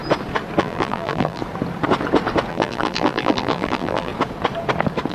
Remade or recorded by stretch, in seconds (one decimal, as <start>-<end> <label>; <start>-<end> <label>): 0.0-0.6 recorded; 0.6-1.4 remade; 1.4-2.5 recorded; 2.5-4.1 remade; 4.1-5.1 recorded

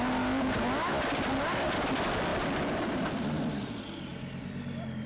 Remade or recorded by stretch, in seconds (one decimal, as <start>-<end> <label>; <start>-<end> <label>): 0.0-2.3 recorded; 2.3-3.5 remade; 3.5-4.1 recorded; 4.1-5.1 remade

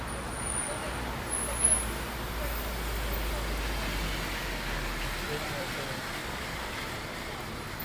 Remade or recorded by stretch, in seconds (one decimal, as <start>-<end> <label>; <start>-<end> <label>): 0.0-6.2 recorded; 6.2-7.8 remade

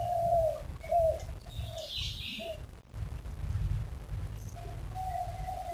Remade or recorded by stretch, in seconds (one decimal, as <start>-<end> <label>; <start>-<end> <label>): 0.0-2.3 recorded; 2.3-2.9 remade; 2.9-5.7 recorded

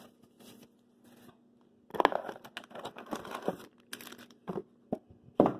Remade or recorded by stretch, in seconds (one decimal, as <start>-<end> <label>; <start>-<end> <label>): 0.0-5.6 recorded

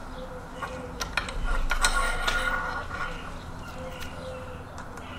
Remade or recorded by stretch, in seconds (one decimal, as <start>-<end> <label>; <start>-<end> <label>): 0.0-5.2 recorded

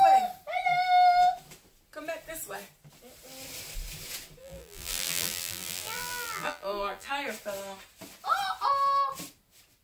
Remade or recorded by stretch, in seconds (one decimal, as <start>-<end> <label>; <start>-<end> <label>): 0.0-4.4 recorded; 4.4-7.1 remade; 7.1-9.8 recorded

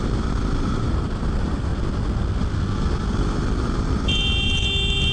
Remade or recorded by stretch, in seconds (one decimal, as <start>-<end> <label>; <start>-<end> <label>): 0.0-1.7 remade; 1.7-3.1 recorded; 3.1-5.1 remade